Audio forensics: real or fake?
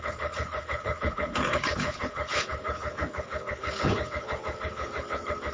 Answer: fake